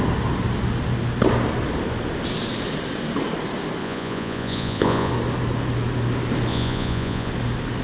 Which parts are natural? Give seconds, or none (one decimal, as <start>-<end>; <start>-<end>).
0.0-3.8; 5.1-6.5; 7.3-7.8